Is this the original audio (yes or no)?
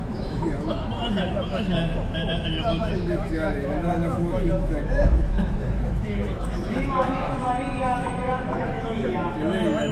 no